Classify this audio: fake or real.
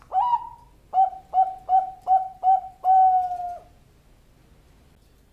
real